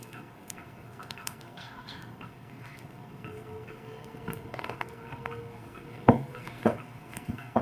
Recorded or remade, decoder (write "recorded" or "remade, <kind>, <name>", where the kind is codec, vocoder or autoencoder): remade, codec, SNAC